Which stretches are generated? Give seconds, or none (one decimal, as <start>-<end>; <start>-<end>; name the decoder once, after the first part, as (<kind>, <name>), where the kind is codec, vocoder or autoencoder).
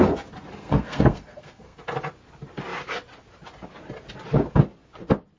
0.6-1.8 (codec, SNAC)